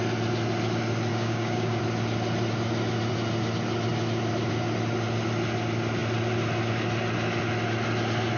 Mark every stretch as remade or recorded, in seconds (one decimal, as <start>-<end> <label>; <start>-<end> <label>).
0.0-1.1 recorded; 1.1-1.8 remade; 1.8-8.4 recorded